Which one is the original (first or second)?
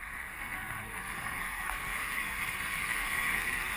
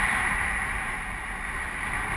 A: second